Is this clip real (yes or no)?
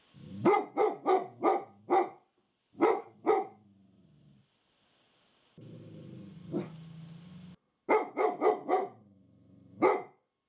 yes